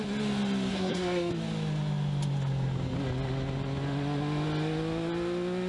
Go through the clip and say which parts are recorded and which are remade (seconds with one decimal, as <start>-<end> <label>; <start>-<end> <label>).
0.0-0.7 recorded; 0.7-1.3 remade; 1.3-5.7 recorded